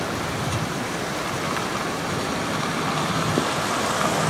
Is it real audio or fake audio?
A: real